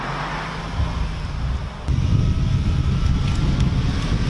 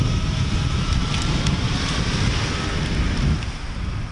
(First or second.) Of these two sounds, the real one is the first